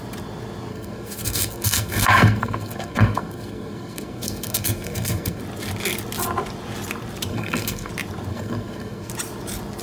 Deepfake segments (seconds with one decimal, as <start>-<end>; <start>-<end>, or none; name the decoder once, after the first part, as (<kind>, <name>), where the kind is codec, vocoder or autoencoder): 0.7-5.4 (codec, SNAC); 7.3-7.9; 8.3-9.1